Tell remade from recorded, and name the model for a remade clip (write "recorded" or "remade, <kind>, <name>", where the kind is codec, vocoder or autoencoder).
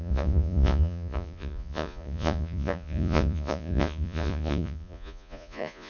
remade, vocoder, Vocos